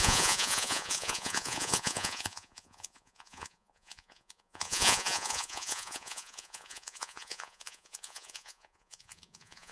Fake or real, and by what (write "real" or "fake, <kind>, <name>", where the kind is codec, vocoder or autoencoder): fake, vocoder, Vocos